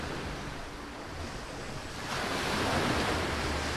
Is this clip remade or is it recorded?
recorded